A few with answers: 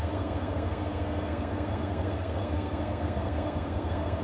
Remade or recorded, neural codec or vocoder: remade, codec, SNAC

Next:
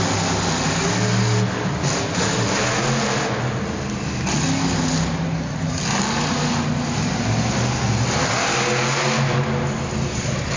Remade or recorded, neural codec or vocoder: recorded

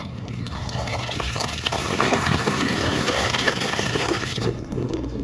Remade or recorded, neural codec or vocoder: remade, codec, SNAC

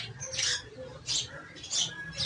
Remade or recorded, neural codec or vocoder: recorded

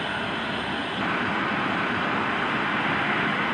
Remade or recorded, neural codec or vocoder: recorded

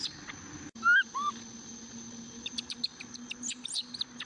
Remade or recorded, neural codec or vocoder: recorded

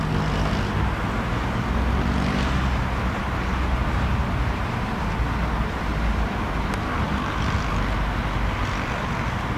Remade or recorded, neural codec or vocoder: recorded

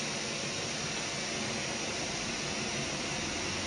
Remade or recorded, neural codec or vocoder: recorded